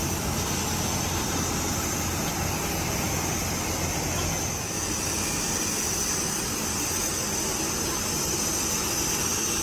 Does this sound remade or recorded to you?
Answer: recorded